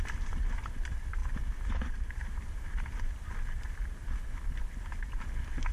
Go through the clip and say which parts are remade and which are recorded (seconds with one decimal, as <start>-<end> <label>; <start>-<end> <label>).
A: 0.0-5.7 recorded